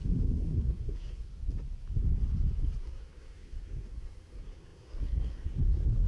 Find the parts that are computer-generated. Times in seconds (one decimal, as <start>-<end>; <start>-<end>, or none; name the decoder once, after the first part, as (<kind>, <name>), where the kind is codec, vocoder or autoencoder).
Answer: 0.0-1.3 (codec, SNAC); 2.8-6.1